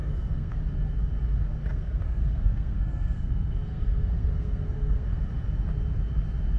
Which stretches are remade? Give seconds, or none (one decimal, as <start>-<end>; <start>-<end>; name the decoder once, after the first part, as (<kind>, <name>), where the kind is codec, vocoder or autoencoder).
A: 0.0-0.6 (codec, SNAC); 1.6-5.2